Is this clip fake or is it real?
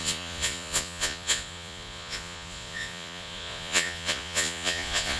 fake